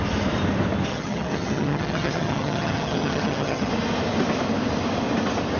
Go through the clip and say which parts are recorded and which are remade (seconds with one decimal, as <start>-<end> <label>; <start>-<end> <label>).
0.0-0.9 recorded; 0.9-3.7 remade; 3.7-5.6 recorded